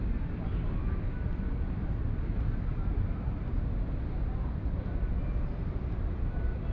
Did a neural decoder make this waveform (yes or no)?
no